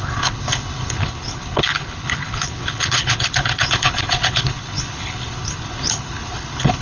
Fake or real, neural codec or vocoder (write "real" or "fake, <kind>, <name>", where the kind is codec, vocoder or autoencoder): fake, codec, HILCodec